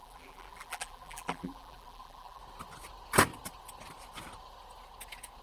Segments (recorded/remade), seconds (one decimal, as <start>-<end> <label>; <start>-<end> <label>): 0.0-2.4 remade; 2.4-5.4 recorded